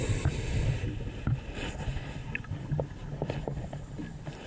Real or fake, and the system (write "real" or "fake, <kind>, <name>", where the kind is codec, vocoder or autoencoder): real